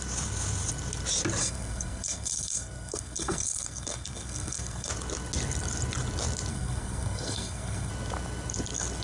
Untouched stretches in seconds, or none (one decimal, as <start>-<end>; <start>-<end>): 0.0-1.4; 4.9-6.5; 7.9-9.0